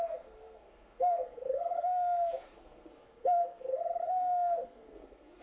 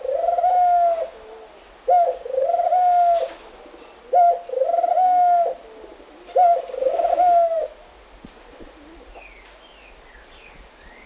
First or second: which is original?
second